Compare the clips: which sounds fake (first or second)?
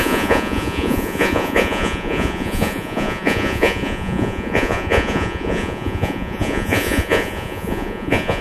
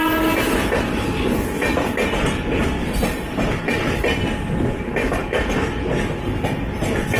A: first